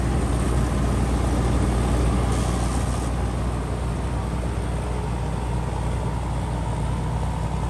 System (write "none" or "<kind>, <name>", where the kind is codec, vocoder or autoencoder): none